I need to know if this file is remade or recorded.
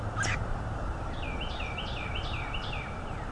remade